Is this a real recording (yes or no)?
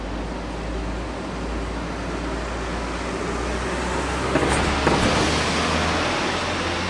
yes